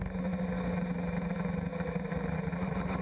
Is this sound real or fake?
real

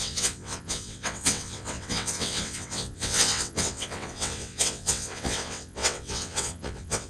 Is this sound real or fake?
fake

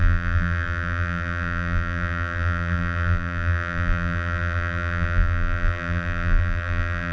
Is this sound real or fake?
fake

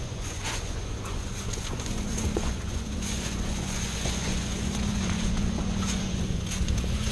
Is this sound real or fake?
fake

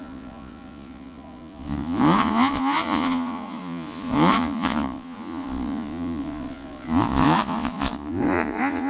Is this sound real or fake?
fake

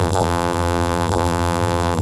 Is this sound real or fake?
fake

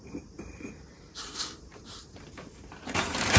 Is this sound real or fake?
fake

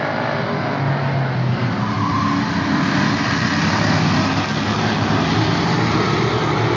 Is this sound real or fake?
real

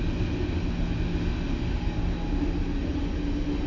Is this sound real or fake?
real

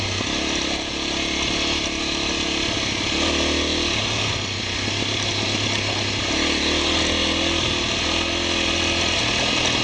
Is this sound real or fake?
real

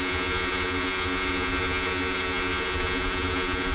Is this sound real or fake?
fake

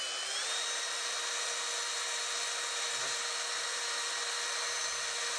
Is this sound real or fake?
real